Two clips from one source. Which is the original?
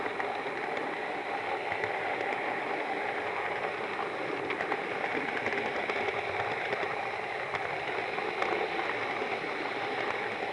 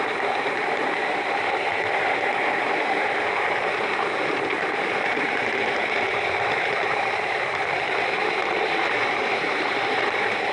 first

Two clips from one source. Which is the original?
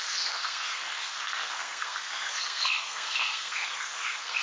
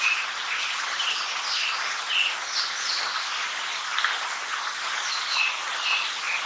second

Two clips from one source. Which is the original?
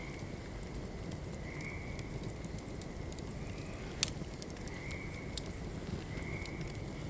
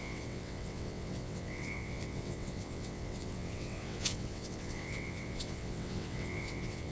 first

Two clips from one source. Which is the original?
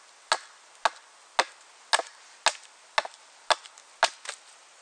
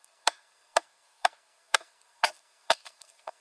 first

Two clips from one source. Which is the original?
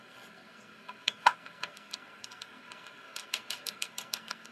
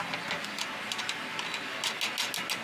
second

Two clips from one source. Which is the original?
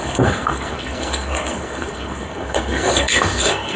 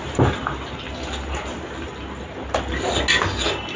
second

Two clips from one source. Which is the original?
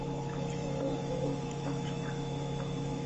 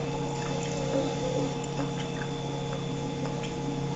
second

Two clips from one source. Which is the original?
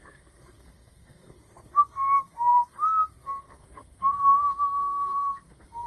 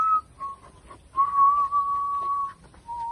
second